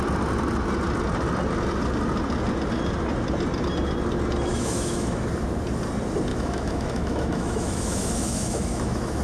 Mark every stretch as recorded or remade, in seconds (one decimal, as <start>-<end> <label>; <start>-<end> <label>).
0.0-4.5 recorded; 4.5-5.3 remade; 5.3-6.3 recorded; 6.3-9.2 remade